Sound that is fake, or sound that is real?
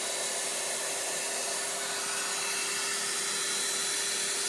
real